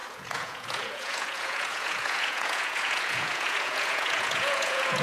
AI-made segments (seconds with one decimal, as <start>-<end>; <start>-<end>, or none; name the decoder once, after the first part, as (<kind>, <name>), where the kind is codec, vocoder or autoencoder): 0.0-5.0 (vocoder, Vocos)